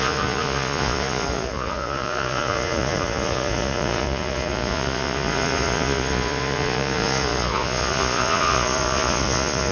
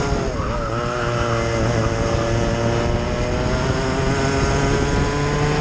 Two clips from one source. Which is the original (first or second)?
second